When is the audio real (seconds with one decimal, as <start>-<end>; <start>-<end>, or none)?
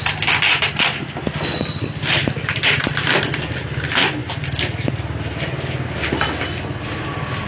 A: 0.0-7.5